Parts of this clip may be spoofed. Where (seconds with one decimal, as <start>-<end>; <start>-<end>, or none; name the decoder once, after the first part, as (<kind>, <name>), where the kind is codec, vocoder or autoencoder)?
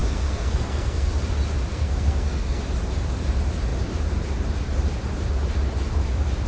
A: 0.0-1.1 (codec, SNAC); 1.7-2.6